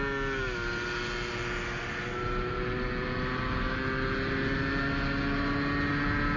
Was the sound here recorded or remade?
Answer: recorded